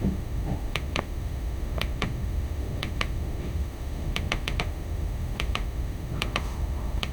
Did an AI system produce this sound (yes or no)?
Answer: yes